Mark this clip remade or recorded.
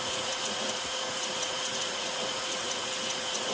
remade